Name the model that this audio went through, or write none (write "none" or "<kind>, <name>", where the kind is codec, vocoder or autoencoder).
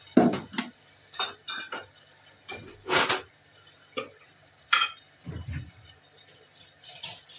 none